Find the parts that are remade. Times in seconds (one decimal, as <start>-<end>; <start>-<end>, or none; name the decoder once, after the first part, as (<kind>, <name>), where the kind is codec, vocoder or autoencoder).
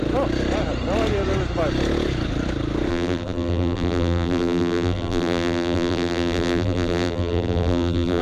2.9-8.2 (vocoder, BigVGAN v2)